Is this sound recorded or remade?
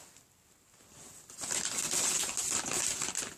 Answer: recorded